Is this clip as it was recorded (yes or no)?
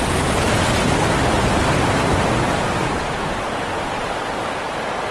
yes